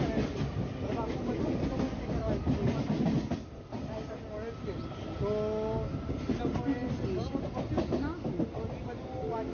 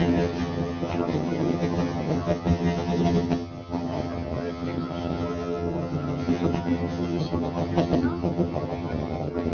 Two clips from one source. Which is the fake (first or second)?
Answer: second